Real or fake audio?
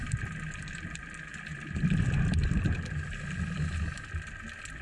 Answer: real